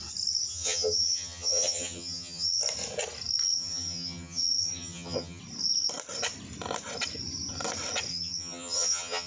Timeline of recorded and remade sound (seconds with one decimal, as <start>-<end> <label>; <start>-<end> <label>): 0.0-0.5 recorded; 0.5-2.6 remade; 2.6-3.4 recorded; 3.4-5.4 remade; 5.4-8.1 recorded; 8.1-9.3 remade